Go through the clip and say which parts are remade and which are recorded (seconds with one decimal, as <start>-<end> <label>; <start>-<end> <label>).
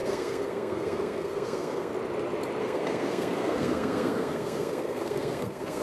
0.0-1.9 remade; 1.9-2.6 recorded; 2.6-5.8 remade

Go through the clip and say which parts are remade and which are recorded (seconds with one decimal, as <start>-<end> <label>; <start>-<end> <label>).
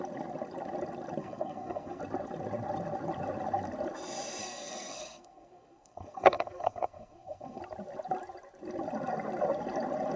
0.0-1.2 recorded; 1.2-2.0 remade; 2.0-4.4 recorded; 4.4-7.6 remade; 7.6-10.2 recorded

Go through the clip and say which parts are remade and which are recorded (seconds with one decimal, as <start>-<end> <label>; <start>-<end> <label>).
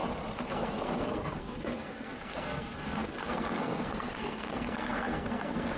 0.0-0.5 recorded; 0.5-5.8 remade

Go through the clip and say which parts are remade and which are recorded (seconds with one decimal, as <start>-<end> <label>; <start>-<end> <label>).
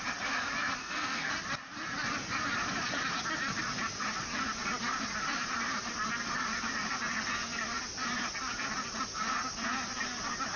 0.0-0.8 recorded; 0.8-1.3 remade; 1.3-10.6 recorded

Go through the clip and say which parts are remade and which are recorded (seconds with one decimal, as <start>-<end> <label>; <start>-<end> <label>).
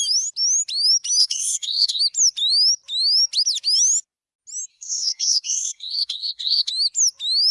0.0-1.2 recorded; 1.2-2.0 remade; 2.0-4.7 recorded; 4.7-6.7 remade; 6.7-7.5 recorded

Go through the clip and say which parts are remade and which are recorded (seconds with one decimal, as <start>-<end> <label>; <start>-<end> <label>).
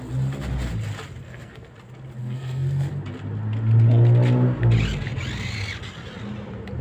0.0-1.2 recorded; 1.2-1.7 remade; 1.7-2.2 recorded; 2.2-2.9 remade; 2.9-6.8 recorded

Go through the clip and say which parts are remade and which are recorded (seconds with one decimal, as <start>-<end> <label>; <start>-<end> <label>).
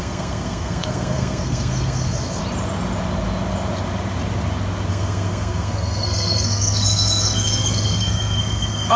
0.0-2.4 remade; 2.4-4.9 recorded; 4.9-9.0 remade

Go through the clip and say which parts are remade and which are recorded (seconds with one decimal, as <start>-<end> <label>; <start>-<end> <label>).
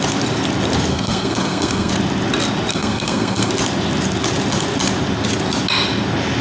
0.0-0.9 recorded; 0.9-1.9 remade; 1.9-2.7 recorded; 2.7-3.5 remade; 3.5-6.4 recorded